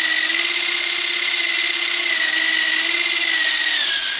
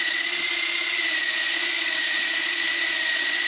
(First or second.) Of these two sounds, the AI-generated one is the second